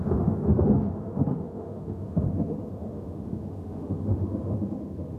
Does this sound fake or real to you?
fake